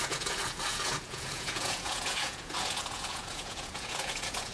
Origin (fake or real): fake